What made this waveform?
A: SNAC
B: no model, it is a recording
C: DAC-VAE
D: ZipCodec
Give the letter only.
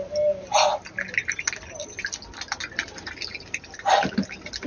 B